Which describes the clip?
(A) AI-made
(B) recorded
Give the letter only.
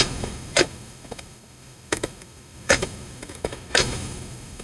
A